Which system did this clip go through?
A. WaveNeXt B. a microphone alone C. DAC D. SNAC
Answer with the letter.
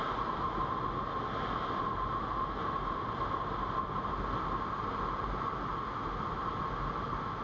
B